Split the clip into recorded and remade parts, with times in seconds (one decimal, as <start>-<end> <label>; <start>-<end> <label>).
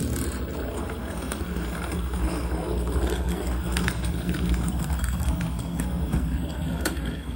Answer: 0.0-0.7 recorded; 0.7-7.4 remade